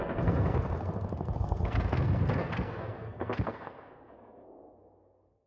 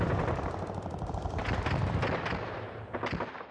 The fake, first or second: first